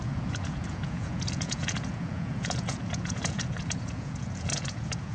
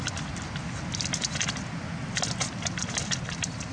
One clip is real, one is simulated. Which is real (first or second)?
second